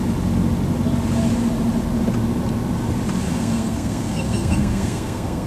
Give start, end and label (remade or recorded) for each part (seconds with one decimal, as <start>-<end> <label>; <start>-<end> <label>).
0.0-3.3 recorded; 3.3-5.5 remade

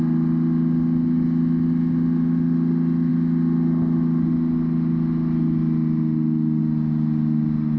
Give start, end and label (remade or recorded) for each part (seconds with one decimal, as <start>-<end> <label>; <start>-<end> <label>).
0.0-7.8 recorded

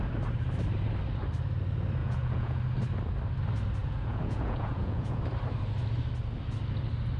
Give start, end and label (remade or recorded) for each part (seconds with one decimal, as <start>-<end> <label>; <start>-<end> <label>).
0.0-2.0 recorded; 2.0-2.6 remade; 2.6-3.8 recorded; 3.8-5.2 remade; 5.2-7.2 recorded

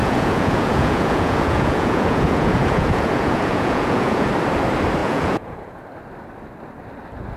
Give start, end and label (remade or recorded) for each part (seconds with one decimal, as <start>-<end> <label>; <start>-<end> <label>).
0.0-4.3 remade; 4.3-5.0 recorded; 5.0-5.8 remade; 5.8-7.4 recorded

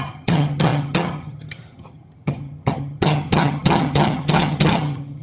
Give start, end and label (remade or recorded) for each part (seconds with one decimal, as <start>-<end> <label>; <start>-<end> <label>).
0.0-5.2 remade

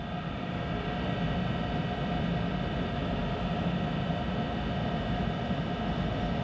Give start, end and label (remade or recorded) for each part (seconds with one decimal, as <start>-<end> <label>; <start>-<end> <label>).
0.0-6.4 recorded

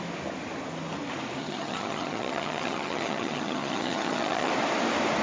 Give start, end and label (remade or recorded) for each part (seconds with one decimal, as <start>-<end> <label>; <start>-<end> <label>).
0.0-1.4 recorded; 1.4-4.5 remade; 4.5-5.2 recorded